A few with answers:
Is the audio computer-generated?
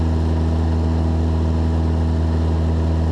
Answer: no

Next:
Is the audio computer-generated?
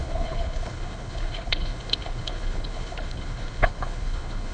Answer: yes